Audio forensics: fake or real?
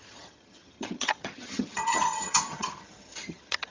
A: fake